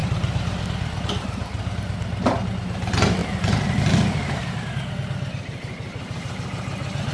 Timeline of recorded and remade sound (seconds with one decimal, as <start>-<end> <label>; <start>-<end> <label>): 0.0-2.5 remade; 2.5-3.2 recorded; 3.2-4.4 remade; 4.4-7.1 recorded